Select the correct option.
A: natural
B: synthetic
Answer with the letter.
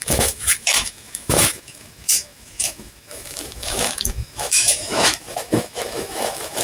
B